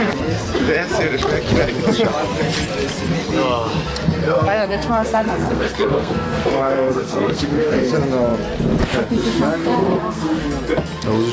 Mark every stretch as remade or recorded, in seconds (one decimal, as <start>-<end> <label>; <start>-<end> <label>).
0.0-4.2 recorded; 4.2-7.9 remade; 7.9-9.6 recorded; 9.6-10.4 remade; 10.4-11.3 recorded